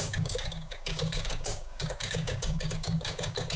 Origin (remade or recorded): remade